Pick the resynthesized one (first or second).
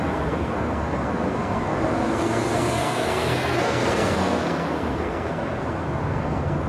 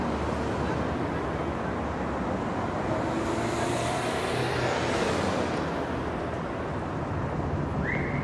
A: first